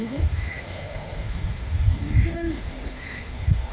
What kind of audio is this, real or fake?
fake